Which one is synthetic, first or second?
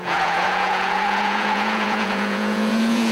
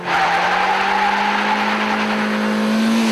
first